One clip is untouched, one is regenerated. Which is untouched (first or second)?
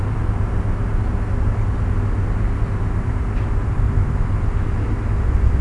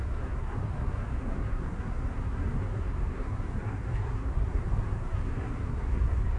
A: first